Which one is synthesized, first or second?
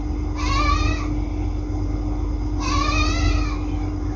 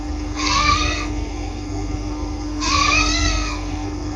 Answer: second